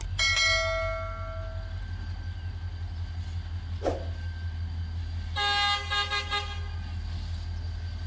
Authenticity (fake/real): real